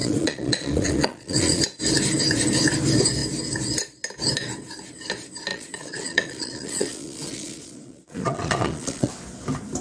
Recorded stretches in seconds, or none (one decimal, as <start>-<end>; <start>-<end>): 1.6-5.5; 9.1-9.8